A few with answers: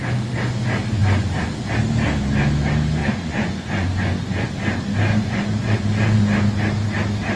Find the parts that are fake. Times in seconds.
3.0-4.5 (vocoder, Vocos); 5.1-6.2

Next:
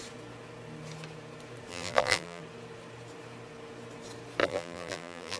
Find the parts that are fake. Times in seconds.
1.7-2.4 (vocoder, BigVGAN v2); 4.4-5.4

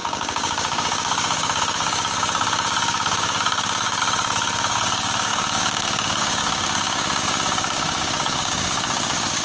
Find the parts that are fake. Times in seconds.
0.0-9.4 (codec, DAC)

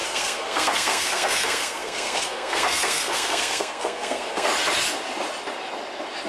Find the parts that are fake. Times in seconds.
0.0-4.5 (codec, SNAC)

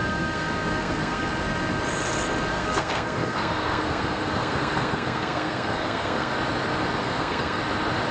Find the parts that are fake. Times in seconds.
0.0-1.3 (codec, SNAC); 2.5-6.3; 7.0-7.6

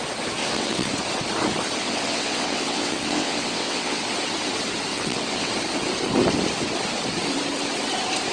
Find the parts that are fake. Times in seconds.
0.4-0.9 (vocoder, WaveNeXt); 1.8-4.0; 4.9-5.5